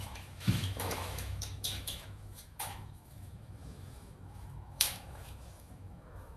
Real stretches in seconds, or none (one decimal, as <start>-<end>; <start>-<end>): none